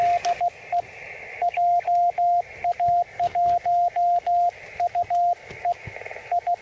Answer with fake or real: real